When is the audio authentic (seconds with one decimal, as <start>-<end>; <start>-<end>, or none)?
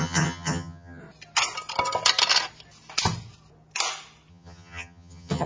1.0-4.3